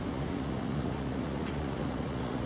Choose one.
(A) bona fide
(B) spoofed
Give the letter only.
B